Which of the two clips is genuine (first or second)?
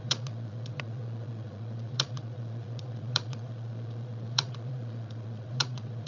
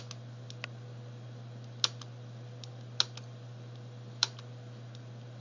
second